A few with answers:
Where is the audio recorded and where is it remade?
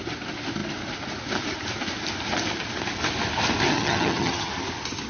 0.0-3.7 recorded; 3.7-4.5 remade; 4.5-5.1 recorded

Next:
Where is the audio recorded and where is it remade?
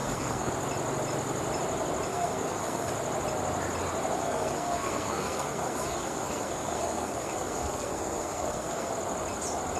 0.0-0.5 remade; 0.5-2.1 recorded; 2.1-2.9 remade; 2.9-4.2 recorded; 4.2-8.9 remade; 8.9-9.8 recorded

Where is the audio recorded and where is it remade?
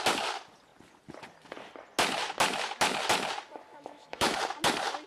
0.0-3.7 recorded; 3.7-4.4 remade; 4.4-5.1 recorded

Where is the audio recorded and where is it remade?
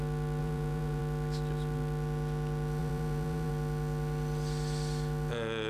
0.0-0.4 recorded; 0.4-1.0 remade; 1.0-2.8 recorded; 2.8-3.5 remade; 3.5-5.7 recorded